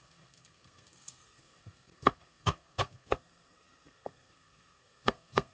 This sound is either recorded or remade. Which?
remade